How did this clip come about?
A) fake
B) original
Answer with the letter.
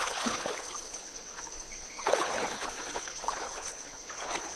A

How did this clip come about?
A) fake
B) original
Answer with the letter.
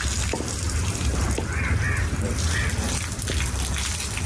B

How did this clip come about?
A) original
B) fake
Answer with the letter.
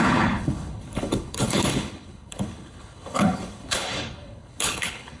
B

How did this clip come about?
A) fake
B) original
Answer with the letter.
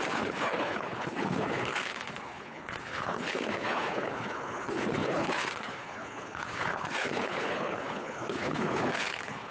A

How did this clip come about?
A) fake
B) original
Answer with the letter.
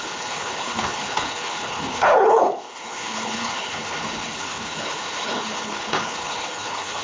A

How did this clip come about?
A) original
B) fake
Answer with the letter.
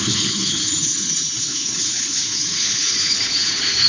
B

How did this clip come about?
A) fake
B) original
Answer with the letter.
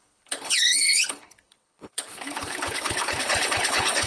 A